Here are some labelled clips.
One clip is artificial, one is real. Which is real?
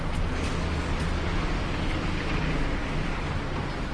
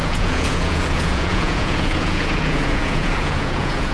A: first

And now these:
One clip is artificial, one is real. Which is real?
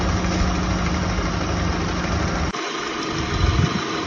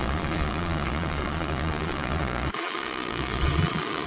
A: first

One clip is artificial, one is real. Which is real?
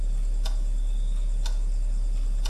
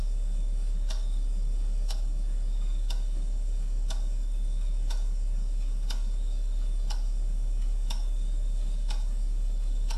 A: first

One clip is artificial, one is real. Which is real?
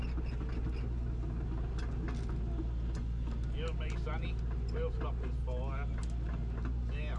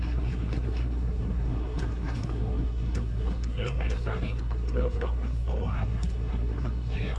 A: first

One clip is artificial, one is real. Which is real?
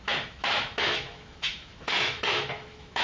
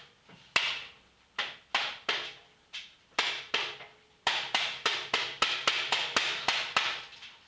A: second